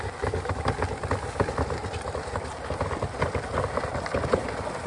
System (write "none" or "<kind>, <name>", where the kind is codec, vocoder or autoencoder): none